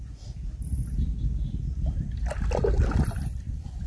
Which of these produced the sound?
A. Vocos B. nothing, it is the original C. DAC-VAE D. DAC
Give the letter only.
B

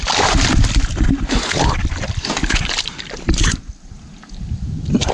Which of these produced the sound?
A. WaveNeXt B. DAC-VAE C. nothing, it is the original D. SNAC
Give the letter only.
C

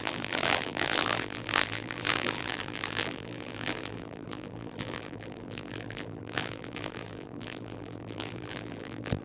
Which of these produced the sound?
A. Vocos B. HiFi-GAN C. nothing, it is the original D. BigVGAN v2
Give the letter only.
D